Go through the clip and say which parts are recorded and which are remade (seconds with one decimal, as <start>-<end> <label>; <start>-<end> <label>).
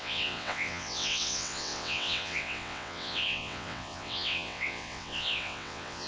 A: 0.0-6.1 remade